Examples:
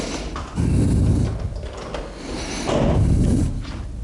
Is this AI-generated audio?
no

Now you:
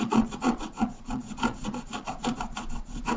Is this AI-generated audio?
yes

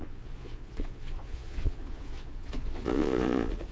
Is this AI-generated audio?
yes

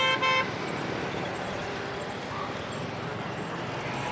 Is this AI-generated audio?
no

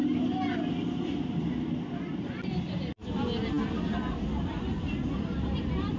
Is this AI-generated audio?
no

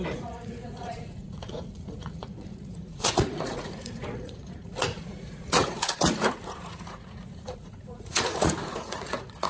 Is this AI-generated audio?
yes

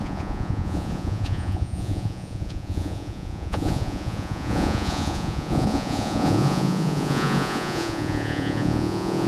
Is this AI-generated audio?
yes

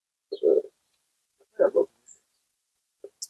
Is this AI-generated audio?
no